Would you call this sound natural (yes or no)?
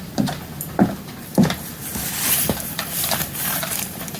no